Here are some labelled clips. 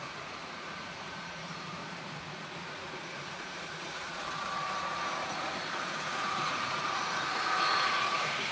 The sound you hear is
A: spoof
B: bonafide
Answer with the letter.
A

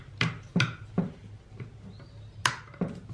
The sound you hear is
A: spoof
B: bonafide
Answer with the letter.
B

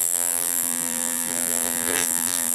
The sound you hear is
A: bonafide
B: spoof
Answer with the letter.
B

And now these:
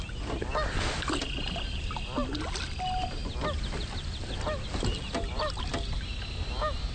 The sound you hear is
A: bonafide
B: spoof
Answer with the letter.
A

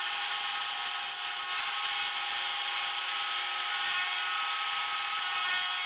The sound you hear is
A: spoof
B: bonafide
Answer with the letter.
B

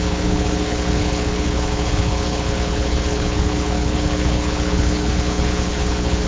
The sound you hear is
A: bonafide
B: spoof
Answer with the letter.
B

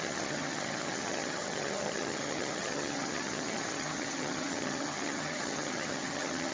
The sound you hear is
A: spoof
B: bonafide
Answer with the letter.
A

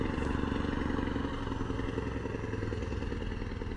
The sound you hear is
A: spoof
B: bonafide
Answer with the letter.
B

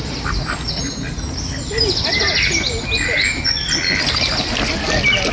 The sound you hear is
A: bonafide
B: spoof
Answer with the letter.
A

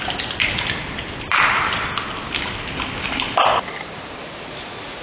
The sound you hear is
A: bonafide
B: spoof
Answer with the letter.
A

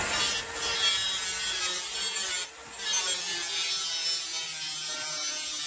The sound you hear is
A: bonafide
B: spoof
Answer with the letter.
A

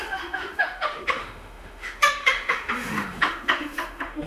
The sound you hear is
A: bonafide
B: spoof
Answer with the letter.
B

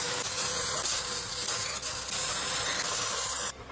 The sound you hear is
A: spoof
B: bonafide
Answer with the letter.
B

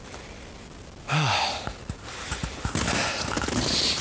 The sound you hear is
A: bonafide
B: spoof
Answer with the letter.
A